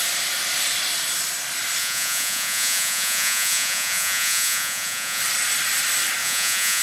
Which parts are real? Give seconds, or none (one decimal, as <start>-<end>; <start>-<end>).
0.0-1.8; 5.2-6.2